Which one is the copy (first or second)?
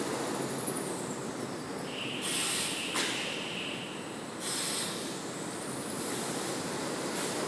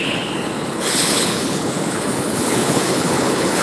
second